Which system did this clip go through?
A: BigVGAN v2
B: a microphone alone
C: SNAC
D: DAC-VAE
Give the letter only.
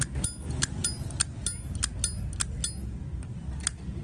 B